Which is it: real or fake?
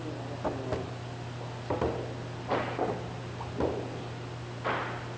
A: real